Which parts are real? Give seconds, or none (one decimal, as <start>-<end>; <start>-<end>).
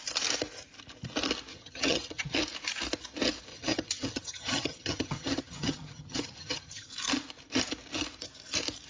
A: 0.0-1.5; 2.4-3.5; 6.9-8.9